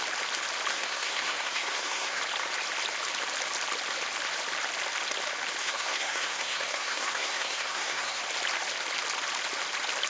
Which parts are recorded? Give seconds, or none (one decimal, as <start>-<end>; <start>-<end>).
0.0-0.7; 2.2-5.6; 8.2-10.1